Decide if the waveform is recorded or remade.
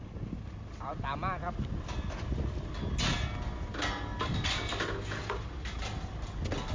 recorded